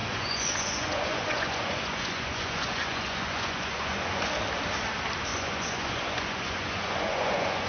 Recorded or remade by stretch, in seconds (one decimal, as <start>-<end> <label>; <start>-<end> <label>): 0.0-4.3 remade; 4.3-5.3 recorded; 5.3-7.7 remade